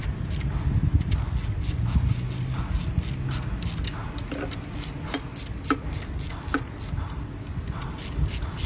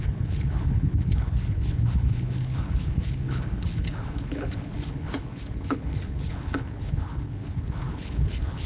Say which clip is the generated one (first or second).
second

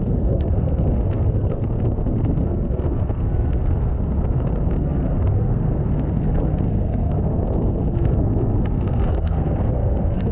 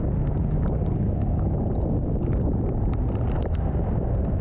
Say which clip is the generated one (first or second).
first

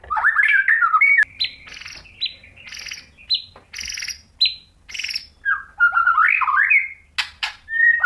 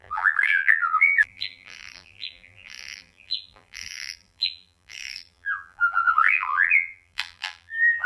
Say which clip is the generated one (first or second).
second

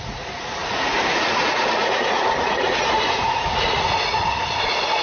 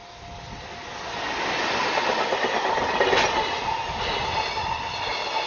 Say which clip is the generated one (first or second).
first